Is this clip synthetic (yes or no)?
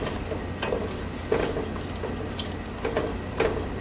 no